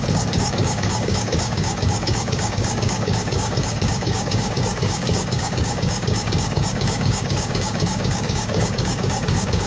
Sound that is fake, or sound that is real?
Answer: fake